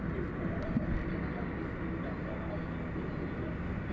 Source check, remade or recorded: recorded